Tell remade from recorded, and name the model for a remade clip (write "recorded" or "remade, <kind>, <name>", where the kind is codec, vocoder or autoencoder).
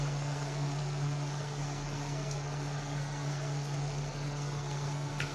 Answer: remade, codec, SNAC